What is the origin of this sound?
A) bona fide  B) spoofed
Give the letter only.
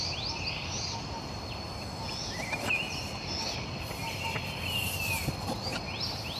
A